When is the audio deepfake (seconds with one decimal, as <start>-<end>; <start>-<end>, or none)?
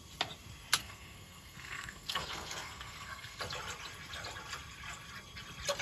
0.8-3.4